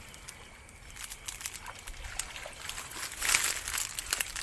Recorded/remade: recorded